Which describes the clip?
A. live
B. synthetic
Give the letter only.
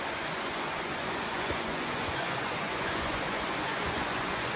B